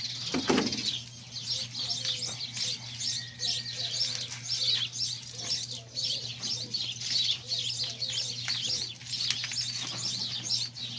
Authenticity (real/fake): real